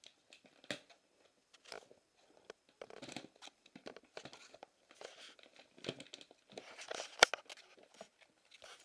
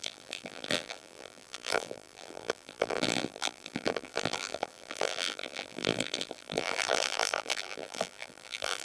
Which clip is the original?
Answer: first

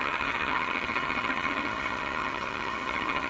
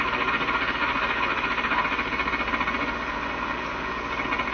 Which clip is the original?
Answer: second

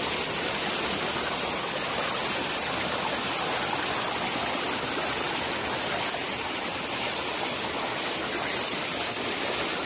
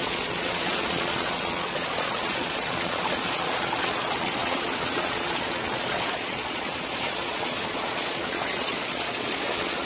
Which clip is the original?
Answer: first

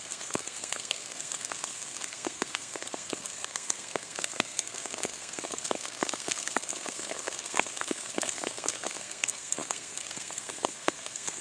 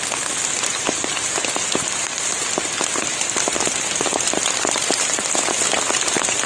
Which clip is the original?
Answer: second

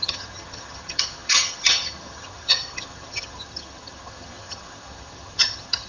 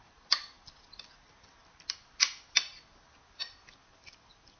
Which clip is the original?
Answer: second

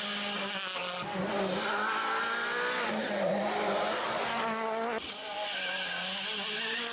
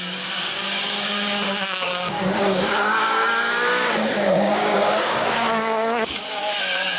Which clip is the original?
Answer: first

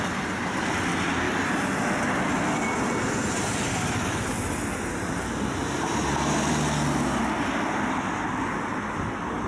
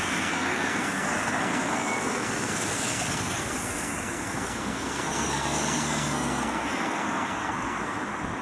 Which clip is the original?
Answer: first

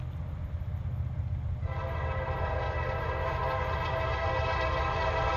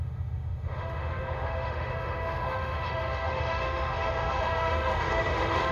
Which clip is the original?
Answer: first